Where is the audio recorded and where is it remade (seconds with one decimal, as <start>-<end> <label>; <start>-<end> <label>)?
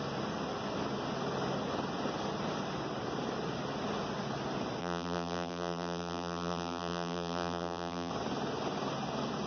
0.0-4.8 recorded; 4.8-8.1 remade; 8.1-9.5 recorded